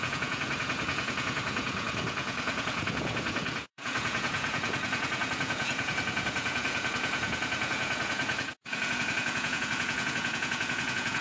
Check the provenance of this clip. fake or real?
fake